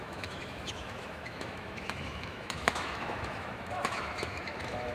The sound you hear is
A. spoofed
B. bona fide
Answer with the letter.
A